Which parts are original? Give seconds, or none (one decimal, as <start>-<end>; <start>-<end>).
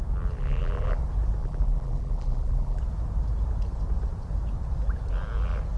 0.0-0.4; 1.0-1.4; 2.8-5.8